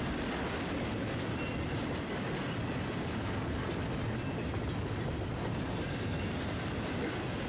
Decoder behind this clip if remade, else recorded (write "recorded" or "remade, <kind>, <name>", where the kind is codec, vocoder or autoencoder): recorded